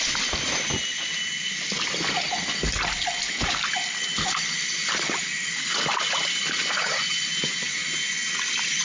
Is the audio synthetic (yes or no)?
no